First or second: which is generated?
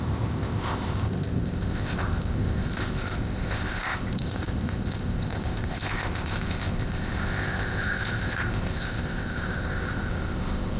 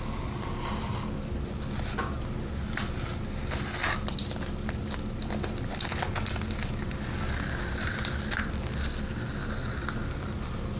first